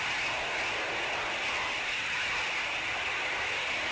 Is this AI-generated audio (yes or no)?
no